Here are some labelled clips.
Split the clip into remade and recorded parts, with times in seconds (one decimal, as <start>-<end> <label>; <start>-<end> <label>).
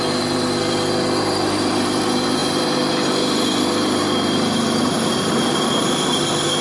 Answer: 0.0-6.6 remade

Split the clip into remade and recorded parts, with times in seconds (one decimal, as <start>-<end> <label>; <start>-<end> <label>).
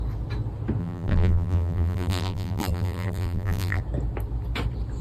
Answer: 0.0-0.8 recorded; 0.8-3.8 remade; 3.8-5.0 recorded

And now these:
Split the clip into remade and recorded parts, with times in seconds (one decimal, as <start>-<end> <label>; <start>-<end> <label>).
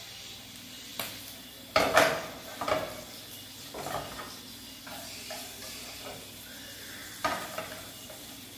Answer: 0.0-0.9 recorded; 0.9-3.4 remade; 3.4-8.6 recorded